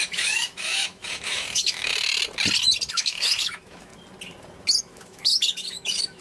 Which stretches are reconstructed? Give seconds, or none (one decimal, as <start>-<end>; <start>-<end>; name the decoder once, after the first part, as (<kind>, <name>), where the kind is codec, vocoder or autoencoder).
0.0-1.9 (autoencoder, DAC-VAE); 2.9-3.9; 4.8-6.2